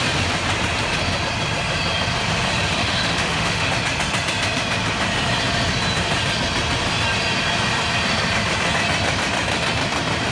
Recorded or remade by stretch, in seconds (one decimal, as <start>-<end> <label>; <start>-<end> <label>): 0.0-2.8 recorded; 2.8-3.7 remade; 3.7-10.3 recorded